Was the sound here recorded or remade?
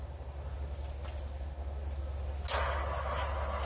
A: recorded